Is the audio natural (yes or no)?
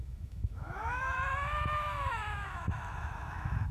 no